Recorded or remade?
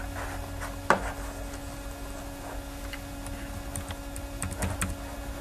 recorded